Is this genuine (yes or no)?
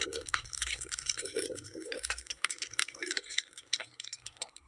no